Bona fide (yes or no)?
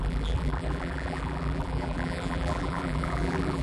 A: no